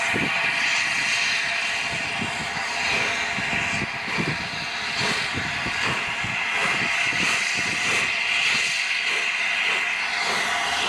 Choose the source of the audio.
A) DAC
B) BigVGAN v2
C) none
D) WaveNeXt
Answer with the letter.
C